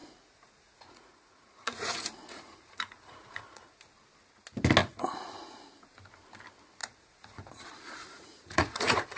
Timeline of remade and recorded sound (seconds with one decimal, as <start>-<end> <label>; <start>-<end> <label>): 0.0-3.8 remade; 3.8-4.8 recorded; 4.8-5.8 remade; 5.8-6.8 recorded; 6.8-9.2 remade